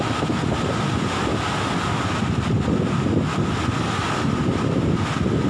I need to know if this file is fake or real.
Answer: real